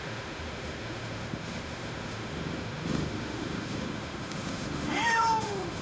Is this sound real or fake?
fake